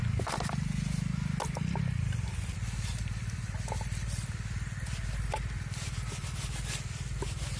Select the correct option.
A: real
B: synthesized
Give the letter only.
A